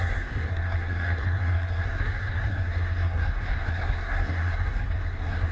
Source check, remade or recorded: remade